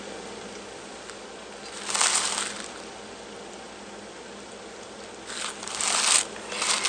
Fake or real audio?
real